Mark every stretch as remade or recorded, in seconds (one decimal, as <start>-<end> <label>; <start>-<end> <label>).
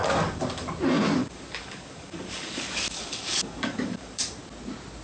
0.0-0.7 remade; 0.7-1.2 recorded; 1.2-4.2 remade; 4.2-5.0 recorded